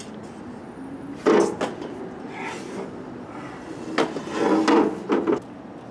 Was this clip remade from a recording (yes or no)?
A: no